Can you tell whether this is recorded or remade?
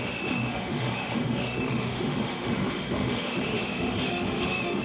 remade